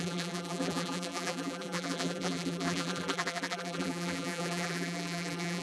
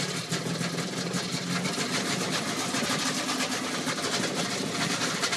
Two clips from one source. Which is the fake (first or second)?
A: first